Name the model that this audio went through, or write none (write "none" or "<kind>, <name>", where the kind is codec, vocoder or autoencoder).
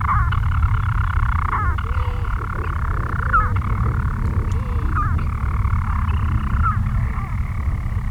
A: none